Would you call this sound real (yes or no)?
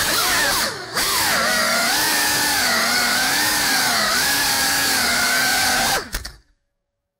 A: no